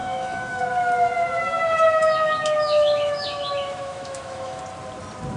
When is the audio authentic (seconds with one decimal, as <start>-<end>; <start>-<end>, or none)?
0.6-1.4; 4.6-5.4